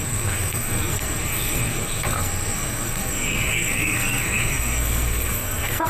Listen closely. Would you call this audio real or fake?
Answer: fake